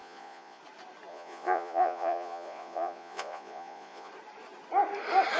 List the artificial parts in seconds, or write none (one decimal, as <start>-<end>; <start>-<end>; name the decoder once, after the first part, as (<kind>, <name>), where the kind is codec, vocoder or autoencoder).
0.0-0.6 (vocoder, Vocos); 1.1-4.1